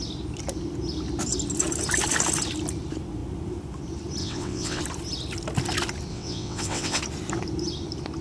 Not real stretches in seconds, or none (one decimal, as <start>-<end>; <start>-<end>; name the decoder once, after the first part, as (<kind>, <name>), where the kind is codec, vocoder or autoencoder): 4.2-4.8 (vocoder, WaveNeXt); 6.1-7.0